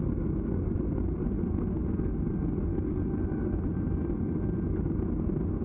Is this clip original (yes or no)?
yes